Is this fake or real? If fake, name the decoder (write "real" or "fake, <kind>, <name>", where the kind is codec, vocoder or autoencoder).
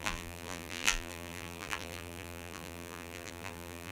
fake, vocoder, BigVGAN v2